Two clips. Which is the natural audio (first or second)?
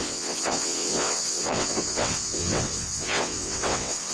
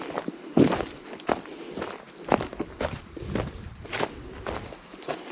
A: second